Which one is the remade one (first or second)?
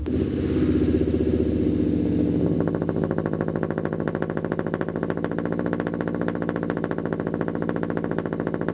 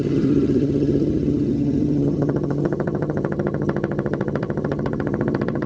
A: second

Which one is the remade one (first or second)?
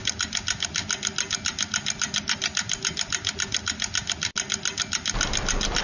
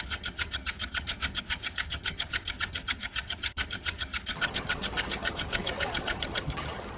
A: second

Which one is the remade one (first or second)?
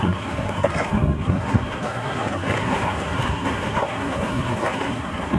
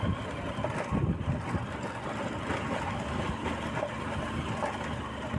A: first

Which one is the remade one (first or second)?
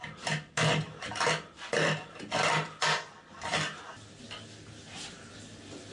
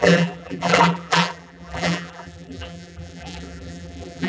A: second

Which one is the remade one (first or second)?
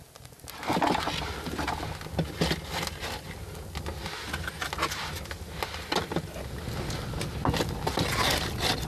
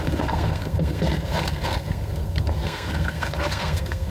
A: second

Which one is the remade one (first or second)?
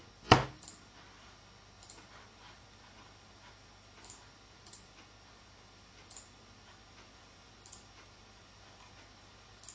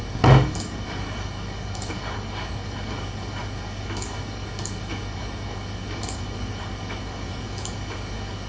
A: second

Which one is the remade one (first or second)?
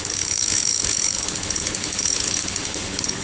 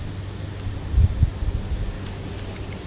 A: first